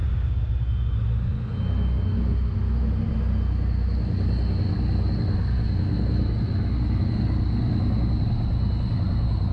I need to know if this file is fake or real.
real